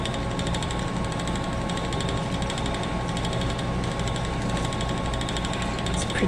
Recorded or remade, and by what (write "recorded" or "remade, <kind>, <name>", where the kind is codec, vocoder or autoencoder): recorded